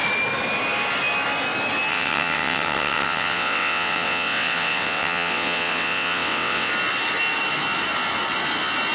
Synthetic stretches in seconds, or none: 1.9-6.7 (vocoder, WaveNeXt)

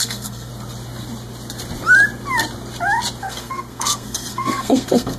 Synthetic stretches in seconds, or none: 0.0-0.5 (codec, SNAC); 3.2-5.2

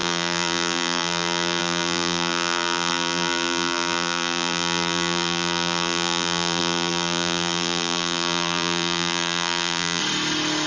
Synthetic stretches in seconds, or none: 0.0-10.0 (vocoder, BigVGAN v2)